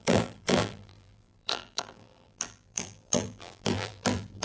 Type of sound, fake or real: fake